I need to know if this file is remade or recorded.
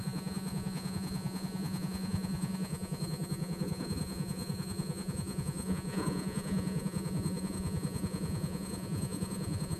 remade